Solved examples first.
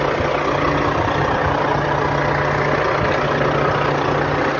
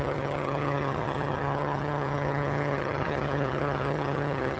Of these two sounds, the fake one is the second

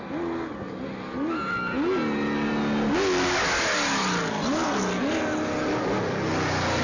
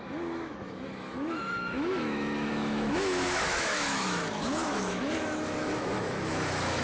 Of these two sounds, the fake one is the second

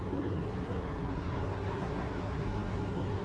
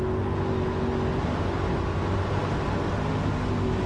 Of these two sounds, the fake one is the first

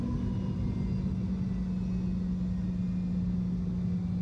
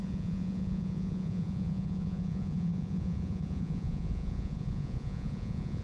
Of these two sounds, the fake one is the second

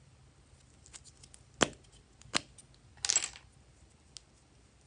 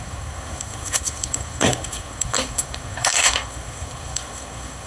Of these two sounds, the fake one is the second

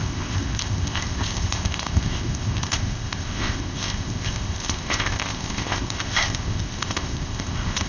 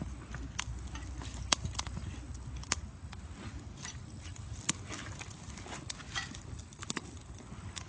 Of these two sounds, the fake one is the first